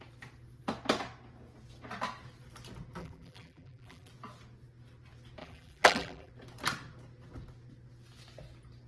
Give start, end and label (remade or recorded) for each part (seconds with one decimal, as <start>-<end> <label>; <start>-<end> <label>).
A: 0.0-3.0 recorded; 3.0-4.1 remade; 4.1-5.4 recorded; 5.4-6.3 remade; 6.3-8.9 recorded